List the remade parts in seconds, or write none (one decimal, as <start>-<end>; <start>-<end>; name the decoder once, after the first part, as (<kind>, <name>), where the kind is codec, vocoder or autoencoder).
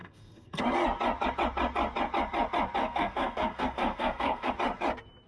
0.0-0.6 (codec, SNAC); 2.8-4.5